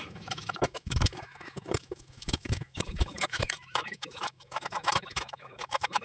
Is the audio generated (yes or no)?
yes